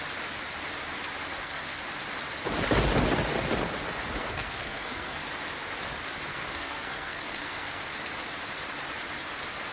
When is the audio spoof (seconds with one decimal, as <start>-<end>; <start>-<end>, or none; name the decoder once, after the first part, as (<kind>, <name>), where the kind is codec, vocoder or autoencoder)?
1.3-1.8 (codec, SNAC); 4.2-5.2; 6.3-7.9